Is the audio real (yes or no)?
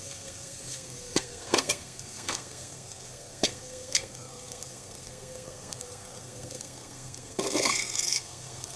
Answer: no